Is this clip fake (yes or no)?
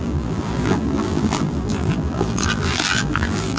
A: yes